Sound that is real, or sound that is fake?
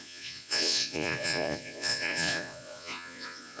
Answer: fake